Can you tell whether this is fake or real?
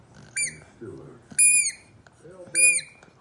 real